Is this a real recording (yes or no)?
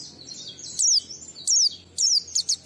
yes